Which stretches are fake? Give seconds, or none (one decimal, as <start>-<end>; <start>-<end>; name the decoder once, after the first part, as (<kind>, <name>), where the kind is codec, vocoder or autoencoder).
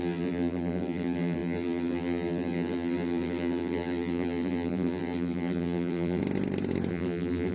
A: 0.0-6.2 (vocoder, BigVGAN v2); 6.9-7.5